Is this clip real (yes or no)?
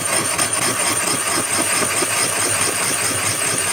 no